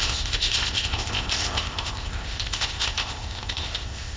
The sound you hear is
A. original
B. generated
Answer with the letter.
B